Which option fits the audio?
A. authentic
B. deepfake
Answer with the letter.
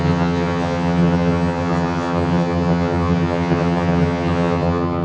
B